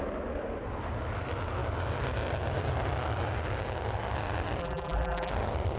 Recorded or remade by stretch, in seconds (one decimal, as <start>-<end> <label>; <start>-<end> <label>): 0.0-4.6 recorded; 4.6-5.3 remade; 5.3-5.8 recorded